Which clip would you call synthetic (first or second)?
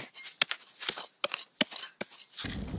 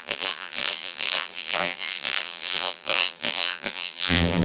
second